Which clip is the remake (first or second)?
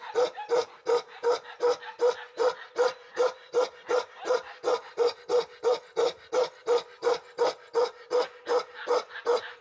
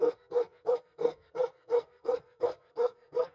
second